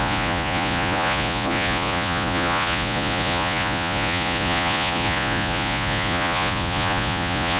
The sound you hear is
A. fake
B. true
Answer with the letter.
A